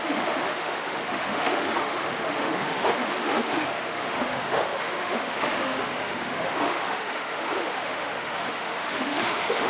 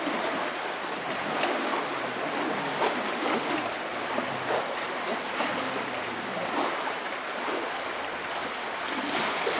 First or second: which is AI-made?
first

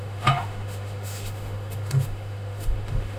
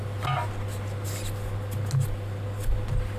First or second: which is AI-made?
first